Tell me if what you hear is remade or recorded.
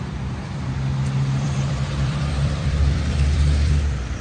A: remade